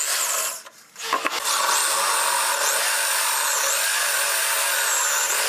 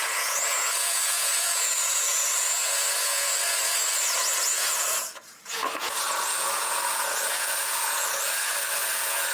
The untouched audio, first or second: first